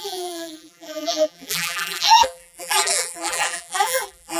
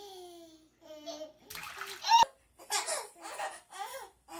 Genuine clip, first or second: second